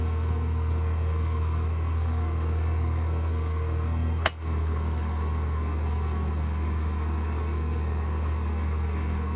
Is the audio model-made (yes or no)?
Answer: yes